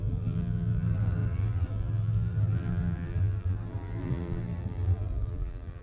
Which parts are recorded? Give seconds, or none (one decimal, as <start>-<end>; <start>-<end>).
none